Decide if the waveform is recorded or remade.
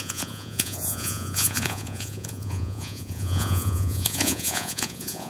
remade